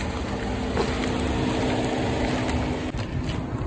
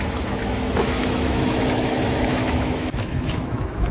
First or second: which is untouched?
first